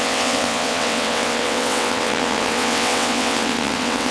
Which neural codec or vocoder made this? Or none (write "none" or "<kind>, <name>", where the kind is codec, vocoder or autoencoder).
vocoder, WaveNeXt